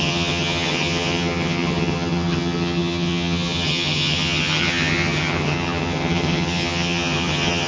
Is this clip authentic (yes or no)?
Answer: no